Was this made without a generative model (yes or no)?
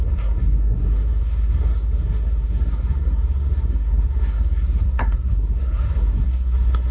no